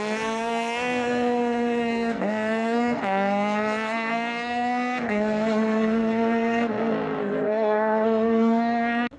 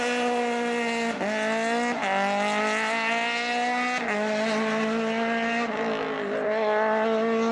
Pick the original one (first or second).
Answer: second